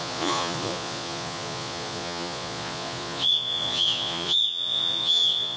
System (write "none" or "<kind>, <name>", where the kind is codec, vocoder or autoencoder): vocoder, Vocos